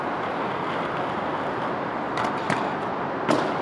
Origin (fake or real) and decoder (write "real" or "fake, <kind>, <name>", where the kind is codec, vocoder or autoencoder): real